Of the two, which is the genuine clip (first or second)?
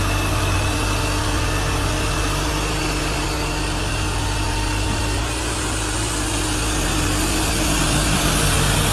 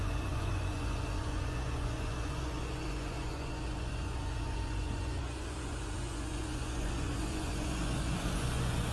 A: first